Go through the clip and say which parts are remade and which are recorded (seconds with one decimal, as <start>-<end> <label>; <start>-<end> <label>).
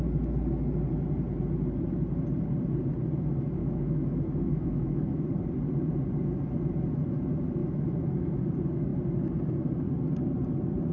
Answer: 0.0-3.6 recorded; 3.6-5.3 remade; 5.3-7.6 recorded; 7.6-8.4 remade; 8.4-10.9 recorded